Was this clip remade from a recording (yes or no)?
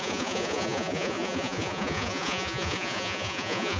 yes